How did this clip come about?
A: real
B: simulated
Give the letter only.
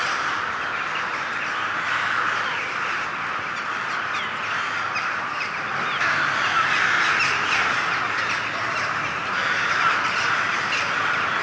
A